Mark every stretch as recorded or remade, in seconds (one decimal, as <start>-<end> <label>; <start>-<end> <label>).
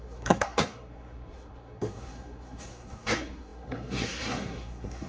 0.0-5.1 remade